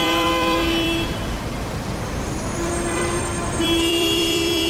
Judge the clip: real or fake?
fake